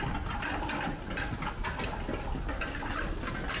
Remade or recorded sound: recorded